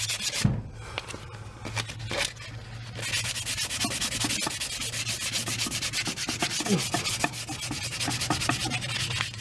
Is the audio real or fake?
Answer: real